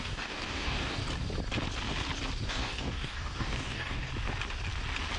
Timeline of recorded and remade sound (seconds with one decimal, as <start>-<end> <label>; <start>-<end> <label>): 0.0-1.0 remade; 1.0-2.5 recorded; 2.5-4.1 remade; 4.1-5.2 recorded